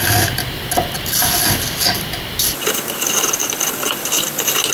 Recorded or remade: recorded